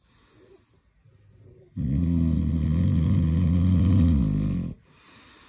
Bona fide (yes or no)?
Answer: yes